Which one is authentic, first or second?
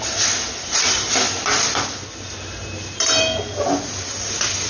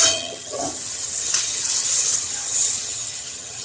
first